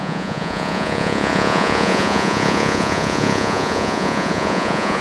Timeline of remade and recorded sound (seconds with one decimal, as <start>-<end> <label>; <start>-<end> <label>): 0.0-5.0 remade